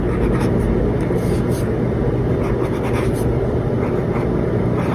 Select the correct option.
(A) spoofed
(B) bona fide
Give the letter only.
B